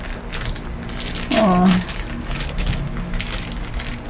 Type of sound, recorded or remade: recorded